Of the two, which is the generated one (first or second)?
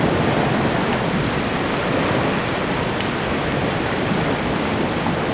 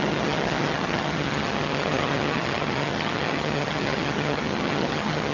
second